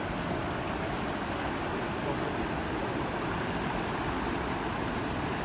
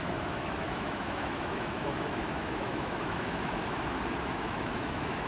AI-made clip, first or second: second